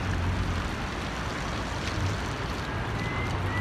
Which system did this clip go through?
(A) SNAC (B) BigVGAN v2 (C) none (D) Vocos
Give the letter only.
C